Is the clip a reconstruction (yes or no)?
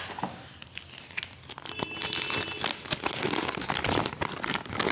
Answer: no